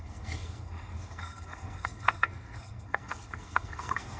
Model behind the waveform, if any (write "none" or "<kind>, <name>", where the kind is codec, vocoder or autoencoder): codec, SNAC